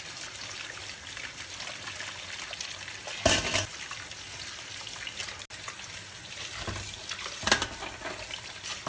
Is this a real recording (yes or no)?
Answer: yes